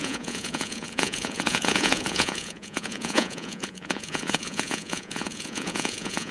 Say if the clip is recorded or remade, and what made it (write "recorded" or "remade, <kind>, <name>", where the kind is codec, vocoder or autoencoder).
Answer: remade, vocoder, Vocos